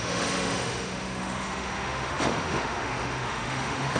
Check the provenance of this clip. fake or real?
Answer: fake